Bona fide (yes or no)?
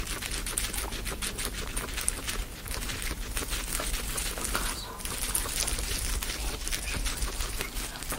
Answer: yes